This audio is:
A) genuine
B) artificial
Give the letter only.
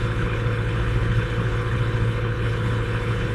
B